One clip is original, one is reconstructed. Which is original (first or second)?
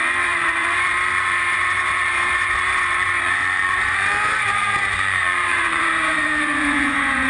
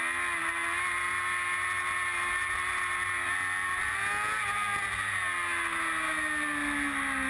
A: second